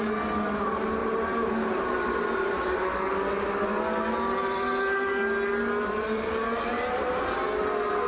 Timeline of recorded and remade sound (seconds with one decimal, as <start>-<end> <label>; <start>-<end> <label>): 0.0-1.0 recorded; 1.0-2.7 remade; 2.7-6.7 recorded; 6.7-7.3 remade; 7.3-8.1 recorded